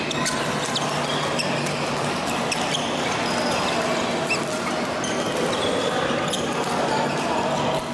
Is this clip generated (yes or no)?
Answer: no